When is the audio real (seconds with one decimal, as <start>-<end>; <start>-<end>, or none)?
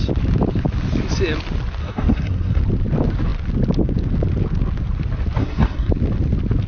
0.0-1.8; 2.6-5.4; 5.9-6.7